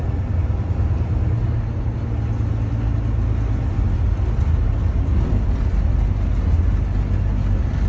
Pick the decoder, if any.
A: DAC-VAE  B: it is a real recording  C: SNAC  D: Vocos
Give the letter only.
B